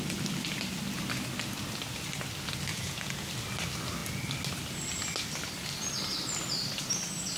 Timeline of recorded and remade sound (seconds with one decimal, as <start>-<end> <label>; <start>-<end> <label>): 0.0-2.7 recorded; 2.7-3.3 remade; 3.3-7.4 recorded